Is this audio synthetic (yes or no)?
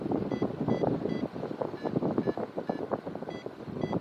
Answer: no